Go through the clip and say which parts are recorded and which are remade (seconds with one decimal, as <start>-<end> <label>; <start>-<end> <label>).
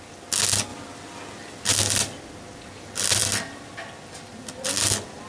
0.0-5.3 recorded